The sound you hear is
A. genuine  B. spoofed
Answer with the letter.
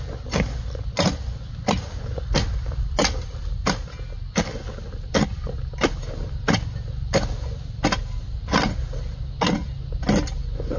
A